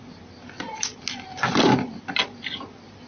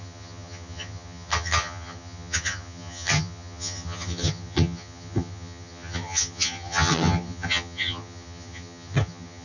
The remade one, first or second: second